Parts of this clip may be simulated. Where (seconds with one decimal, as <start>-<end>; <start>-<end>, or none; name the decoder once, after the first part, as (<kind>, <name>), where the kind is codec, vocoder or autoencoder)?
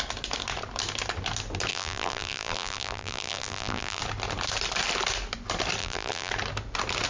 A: 1.7-4.0 (vocoder, BigVGAN v2); 5.8-6.3